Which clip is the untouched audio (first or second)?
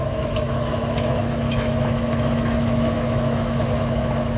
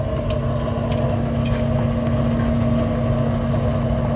second